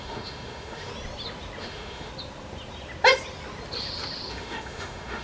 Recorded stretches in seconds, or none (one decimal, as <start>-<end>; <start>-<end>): 0.9-1.6; 2.1-4.3